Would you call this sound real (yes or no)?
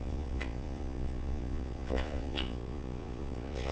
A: no